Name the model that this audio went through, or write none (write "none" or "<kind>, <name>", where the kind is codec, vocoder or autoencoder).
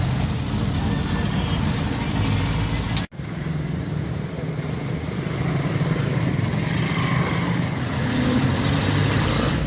none